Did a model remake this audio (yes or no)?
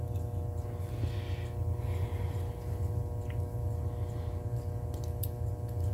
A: no